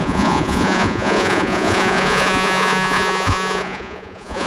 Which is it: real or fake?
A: fake